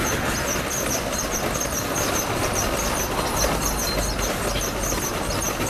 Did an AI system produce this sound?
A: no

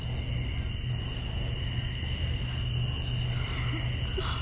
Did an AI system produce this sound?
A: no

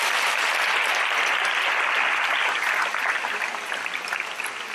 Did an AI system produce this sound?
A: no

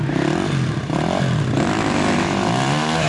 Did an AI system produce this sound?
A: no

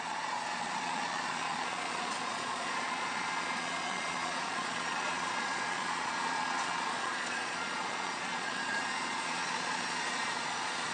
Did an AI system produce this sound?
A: yes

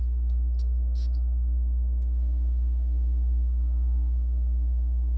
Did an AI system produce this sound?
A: yes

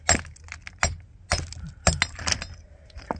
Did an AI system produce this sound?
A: no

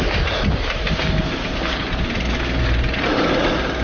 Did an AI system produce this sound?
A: no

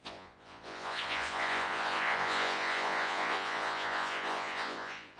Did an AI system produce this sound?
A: yes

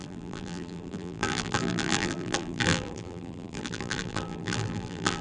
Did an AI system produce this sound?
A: yes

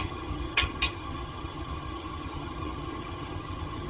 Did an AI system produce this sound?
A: yes